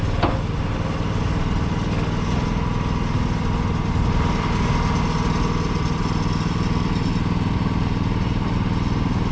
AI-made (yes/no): no